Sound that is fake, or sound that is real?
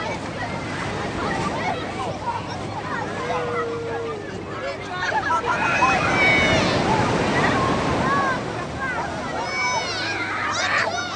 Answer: real